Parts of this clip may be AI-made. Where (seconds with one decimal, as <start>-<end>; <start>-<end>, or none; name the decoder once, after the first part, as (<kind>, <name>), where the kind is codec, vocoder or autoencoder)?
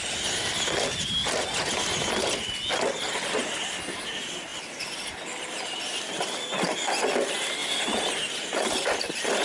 none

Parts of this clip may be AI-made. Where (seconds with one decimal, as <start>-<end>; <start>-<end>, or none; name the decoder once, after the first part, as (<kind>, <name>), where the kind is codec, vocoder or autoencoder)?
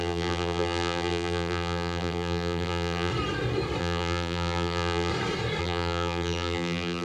0.0-3.1 (vocoder, BigVGAN v2); 3.8-5.1; 5.6-7.0